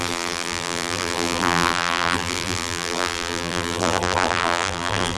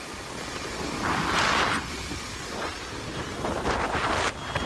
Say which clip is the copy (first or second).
first